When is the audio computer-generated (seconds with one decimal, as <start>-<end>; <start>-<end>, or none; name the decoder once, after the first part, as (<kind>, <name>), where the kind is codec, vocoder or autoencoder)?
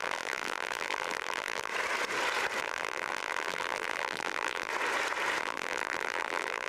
0.0-1.7 (vocoder, BigVGAN v2); 2.6-4.7; 5.4-6.7